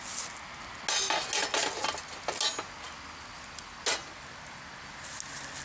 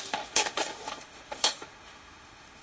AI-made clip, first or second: second